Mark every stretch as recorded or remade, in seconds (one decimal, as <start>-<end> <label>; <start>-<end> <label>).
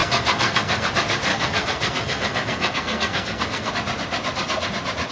0.0-0.9 remade; 0.9-1.3 recorded; 1.3-3.7 remade; 3.7-5.1 recorded